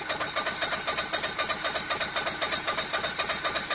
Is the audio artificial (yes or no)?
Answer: no